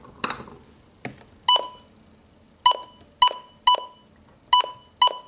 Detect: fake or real real